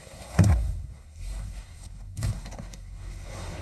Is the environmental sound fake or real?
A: fake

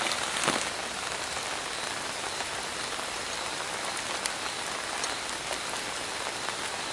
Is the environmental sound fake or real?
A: real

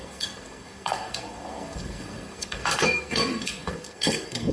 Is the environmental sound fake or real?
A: fake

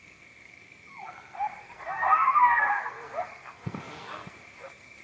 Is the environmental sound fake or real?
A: fake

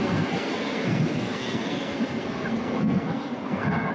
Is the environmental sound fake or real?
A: fake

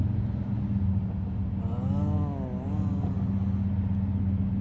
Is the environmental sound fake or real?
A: real